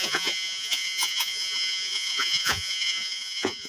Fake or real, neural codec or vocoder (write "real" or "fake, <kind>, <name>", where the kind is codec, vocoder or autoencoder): fake, vocoder, Vocos